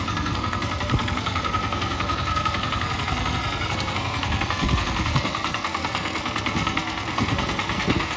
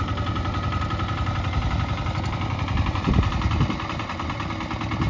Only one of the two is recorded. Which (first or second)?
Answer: second